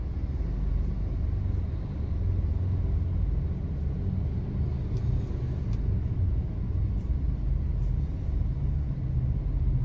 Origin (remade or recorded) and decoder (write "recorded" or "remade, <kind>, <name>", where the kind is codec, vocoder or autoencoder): recorded